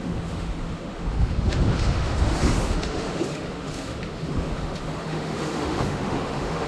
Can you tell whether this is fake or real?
fake